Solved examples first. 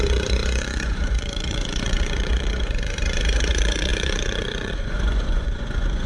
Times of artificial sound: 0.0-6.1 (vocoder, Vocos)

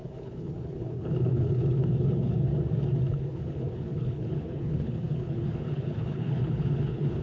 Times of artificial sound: 0.0-2.5 (codec, HILCodec); 3.1-7.2

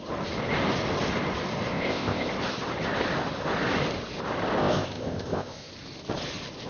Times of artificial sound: 1.7-2.3 (codec, ZipCodec); 4.6-5.7

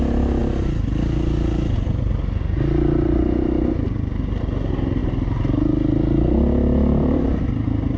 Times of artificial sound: none